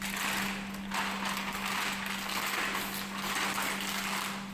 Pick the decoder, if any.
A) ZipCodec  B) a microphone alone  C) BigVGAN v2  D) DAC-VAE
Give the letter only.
B